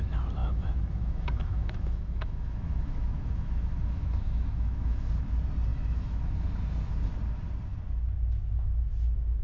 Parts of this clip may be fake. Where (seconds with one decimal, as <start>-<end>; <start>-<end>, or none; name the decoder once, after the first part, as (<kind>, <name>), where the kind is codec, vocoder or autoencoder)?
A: 0.4-5.1 (autoencoder, DAC-VAE); 5.7-6.2